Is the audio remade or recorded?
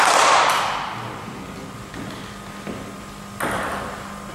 recorded